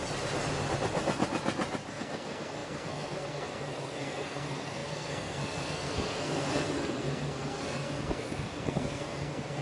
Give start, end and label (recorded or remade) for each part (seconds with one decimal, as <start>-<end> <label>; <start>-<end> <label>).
0.0-1.9 recorded; 1.9-9.6 remade